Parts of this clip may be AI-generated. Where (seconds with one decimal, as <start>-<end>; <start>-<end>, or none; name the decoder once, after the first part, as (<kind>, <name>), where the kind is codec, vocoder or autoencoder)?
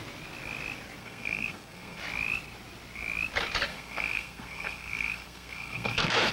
1.0-2.0 (codec, SNAC); 3.7-6.3